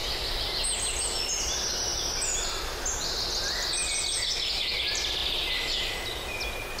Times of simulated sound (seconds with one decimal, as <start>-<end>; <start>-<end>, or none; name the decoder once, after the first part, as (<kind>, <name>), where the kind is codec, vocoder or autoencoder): none